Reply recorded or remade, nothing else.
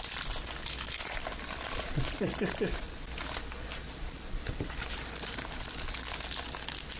recorded